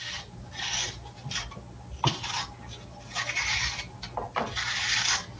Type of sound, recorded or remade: recorded